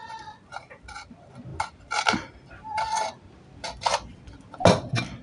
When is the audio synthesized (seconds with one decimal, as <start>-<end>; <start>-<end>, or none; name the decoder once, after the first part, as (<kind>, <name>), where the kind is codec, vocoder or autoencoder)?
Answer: none